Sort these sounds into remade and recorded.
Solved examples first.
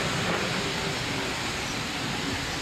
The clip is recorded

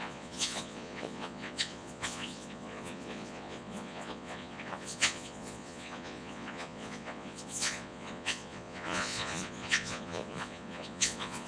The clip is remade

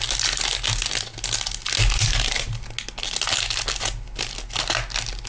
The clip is recorded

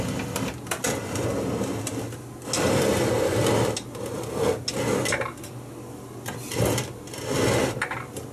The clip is recorded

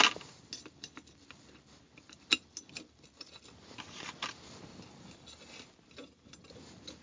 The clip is recorded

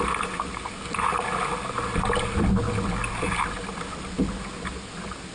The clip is recorded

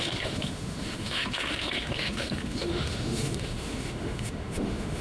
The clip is remade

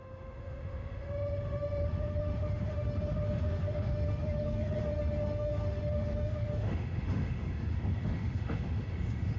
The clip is remade